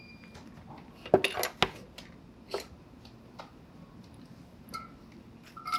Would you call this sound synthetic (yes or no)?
no